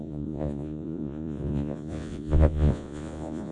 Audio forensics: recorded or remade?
remade